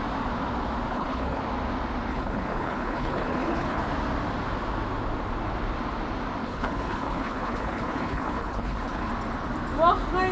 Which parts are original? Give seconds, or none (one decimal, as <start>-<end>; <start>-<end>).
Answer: 0.0-0.9; 1.4-2.1; 3.8-6.4; 9.1-10.3